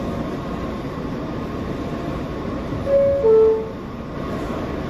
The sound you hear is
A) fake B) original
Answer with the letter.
B